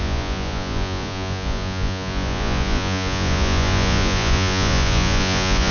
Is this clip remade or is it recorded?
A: remade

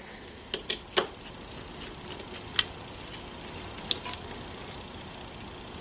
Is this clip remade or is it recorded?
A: recorded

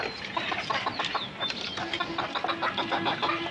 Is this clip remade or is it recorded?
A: recorded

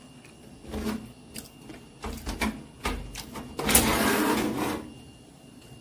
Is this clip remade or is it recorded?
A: recorded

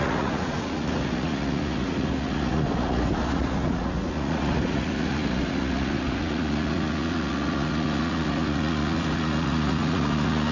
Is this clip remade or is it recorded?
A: remade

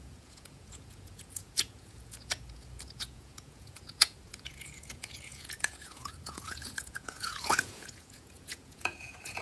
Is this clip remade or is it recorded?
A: remade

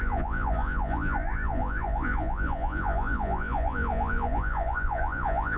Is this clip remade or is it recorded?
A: remade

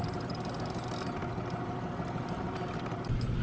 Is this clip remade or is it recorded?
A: recorded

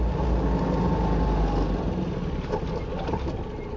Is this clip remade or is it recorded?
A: recorded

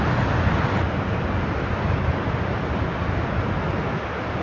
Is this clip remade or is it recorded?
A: recorded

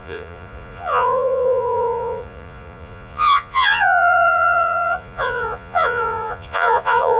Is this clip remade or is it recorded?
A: remade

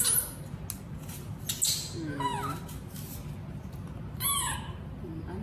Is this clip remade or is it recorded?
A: recorded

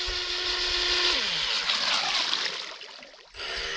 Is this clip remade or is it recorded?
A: recorded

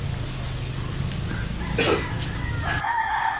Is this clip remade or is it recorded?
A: recorded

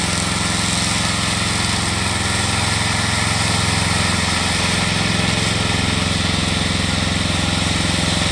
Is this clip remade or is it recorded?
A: recorded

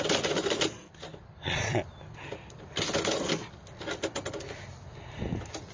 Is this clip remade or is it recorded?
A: recorded